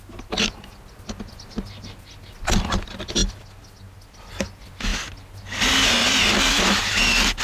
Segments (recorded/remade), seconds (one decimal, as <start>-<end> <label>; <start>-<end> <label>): 0.0-7.4 recorded